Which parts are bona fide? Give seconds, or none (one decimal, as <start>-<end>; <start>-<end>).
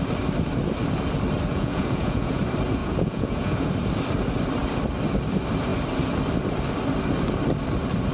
0.0-1.5; 2.4-2.8; 3.7-8.1